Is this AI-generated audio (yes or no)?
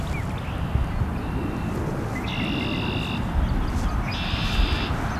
no